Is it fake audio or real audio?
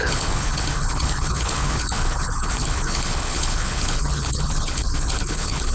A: fake